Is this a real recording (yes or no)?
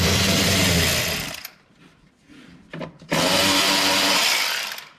yes